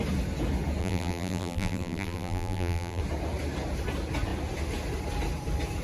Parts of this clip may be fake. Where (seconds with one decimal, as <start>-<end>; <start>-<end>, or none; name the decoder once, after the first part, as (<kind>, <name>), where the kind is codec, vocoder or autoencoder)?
0.8-3.0 (vocoder, BigVGAN v2)